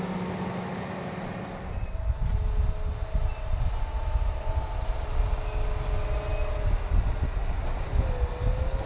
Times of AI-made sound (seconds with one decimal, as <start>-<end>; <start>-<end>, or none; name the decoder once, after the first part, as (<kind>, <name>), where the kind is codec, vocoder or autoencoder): none